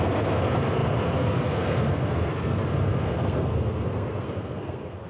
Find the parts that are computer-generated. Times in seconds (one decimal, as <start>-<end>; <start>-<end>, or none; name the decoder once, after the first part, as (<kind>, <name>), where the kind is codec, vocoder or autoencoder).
0.0-5.1 (codec, SNAC)